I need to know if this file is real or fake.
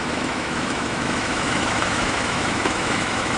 fake